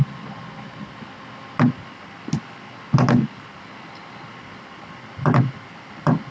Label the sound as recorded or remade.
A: recorded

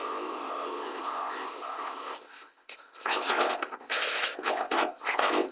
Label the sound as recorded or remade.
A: remade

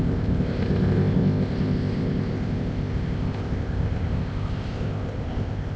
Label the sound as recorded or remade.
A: remade